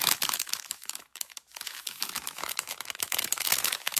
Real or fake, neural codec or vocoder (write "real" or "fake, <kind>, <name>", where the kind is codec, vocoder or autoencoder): fake, autoencoder, DAC-VAE